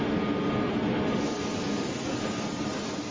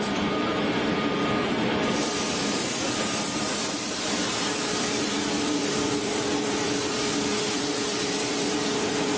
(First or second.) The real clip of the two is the first